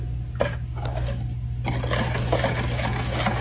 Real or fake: real